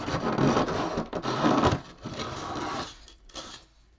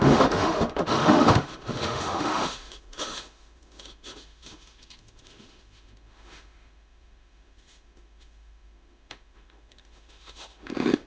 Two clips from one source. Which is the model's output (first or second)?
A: second